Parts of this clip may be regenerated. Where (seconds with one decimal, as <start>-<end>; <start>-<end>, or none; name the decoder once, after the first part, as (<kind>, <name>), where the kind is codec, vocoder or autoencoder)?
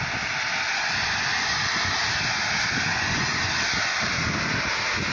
0.7-2.0 (vocoder, Vocos); 2.9-3.5